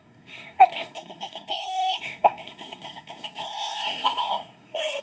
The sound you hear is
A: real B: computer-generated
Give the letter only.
B